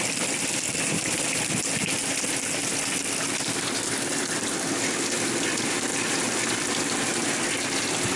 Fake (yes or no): no